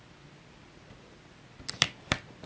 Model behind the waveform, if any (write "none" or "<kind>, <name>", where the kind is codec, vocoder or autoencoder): none